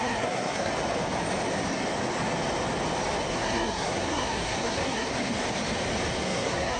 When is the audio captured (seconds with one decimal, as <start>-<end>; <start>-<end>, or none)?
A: 0.7-3.3; 5.1-6.2

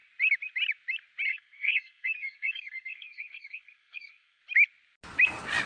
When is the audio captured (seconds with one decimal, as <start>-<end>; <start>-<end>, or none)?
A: 0.0-1.3; 4.4-5.7

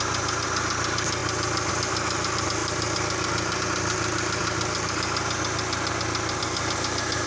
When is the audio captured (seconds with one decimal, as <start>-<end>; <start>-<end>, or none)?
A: 0.0-7.3